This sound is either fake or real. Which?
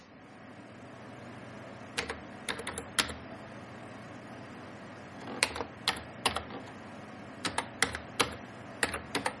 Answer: real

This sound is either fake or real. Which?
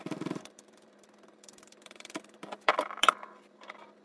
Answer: fake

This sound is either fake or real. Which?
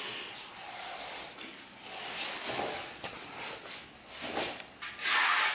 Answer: real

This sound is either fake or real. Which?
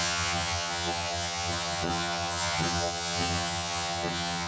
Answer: fake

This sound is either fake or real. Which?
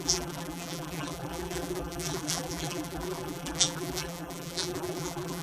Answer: fake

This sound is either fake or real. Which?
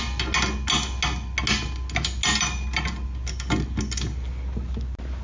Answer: real